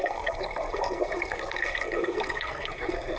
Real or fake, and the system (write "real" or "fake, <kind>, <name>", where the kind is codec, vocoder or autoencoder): fake, codec, SNAC